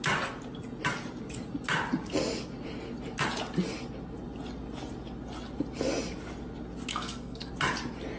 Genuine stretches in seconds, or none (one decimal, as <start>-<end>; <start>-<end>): 0.0-6.9; 7.5-8.2